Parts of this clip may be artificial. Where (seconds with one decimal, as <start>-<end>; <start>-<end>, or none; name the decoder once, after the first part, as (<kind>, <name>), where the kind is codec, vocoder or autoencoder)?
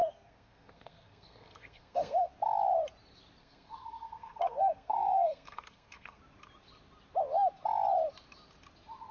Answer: 0.0-2.3 (codec, SNAC); 3.4-6.2